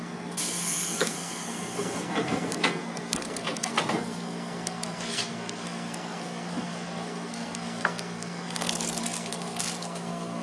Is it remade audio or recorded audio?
remade